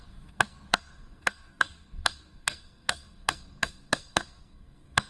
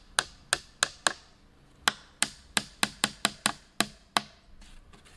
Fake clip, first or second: first